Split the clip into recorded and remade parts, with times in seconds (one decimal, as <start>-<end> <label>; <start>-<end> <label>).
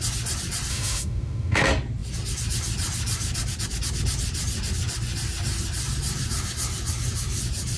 0.0-0.7 recorded; 0.7-1.6 remade; 1.6-7.8 recorded